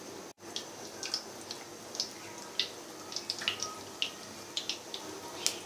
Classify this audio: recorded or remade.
recorded